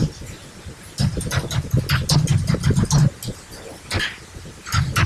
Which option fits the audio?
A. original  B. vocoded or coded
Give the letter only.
A